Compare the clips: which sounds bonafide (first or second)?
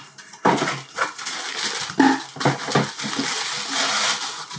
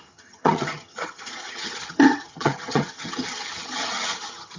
first